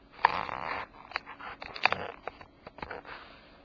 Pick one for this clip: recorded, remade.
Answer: recorded